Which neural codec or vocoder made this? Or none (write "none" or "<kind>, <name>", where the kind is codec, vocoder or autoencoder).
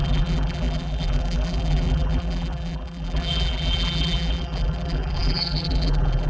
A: vocoder, BigVGAN v2